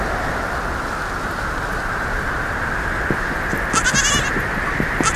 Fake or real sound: real